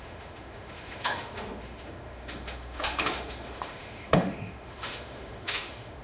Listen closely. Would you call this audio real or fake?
fake